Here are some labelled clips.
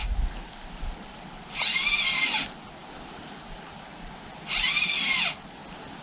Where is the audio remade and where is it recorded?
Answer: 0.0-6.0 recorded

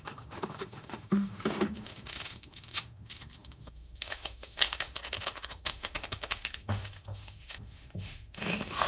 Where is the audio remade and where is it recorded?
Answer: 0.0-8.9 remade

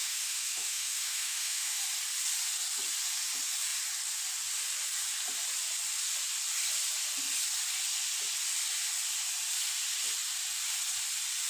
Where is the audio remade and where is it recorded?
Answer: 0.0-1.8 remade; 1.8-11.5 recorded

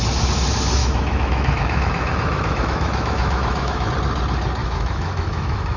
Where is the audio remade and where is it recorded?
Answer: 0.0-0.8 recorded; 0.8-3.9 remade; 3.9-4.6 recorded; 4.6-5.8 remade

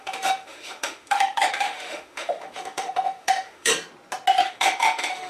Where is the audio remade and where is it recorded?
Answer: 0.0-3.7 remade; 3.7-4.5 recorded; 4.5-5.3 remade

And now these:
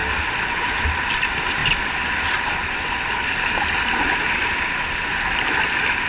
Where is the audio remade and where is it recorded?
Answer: 0.0-6.1 recorded